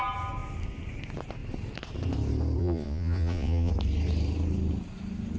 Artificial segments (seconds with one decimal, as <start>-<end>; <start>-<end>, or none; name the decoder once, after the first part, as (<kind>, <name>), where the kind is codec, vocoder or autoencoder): 2.6-3.7 (vocoder, Vocos)